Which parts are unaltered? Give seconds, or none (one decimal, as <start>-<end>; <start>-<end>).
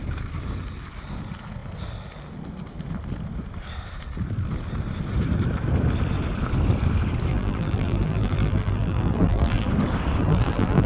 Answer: 0.0-7.3; 9.7-10.2